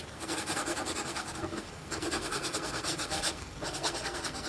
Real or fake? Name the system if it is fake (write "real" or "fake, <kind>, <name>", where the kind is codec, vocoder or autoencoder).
fake, codec, SNAC